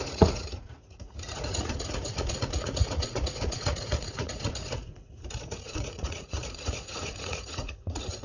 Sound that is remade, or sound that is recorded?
remade